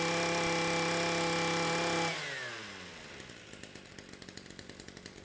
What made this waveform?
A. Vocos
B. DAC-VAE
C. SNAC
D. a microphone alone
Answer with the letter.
D